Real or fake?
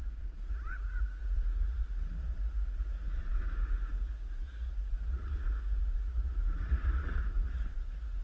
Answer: fake